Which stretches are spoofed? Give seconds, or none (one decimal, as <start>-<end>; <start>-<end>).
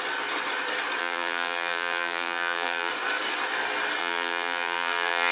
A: 1.0-2.9; 4.0-5.3